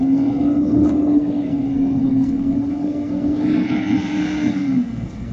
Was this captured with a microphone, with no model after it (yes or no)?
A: no